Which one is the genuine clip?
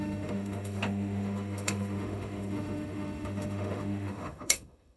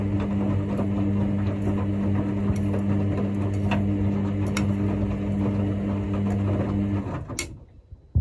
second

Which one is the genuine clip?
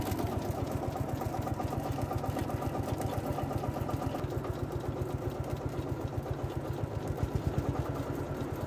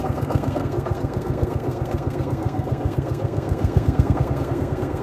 first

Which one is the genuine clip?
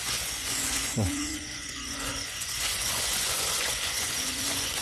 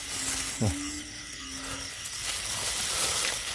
second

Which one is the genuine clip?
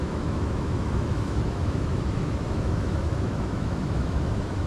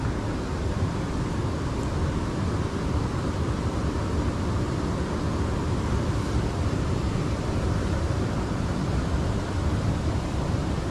second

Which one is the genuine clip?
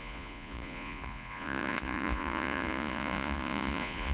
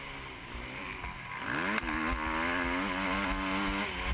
second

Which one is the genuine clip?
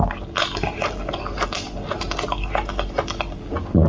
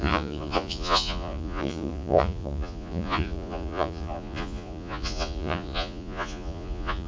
first